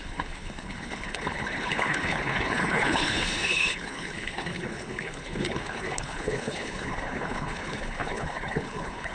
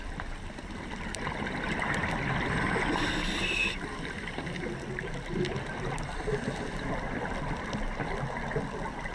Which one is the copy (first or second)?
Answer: first